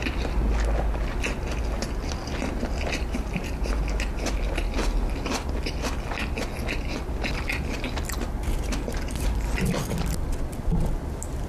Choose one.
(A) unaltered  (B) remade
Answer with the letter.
A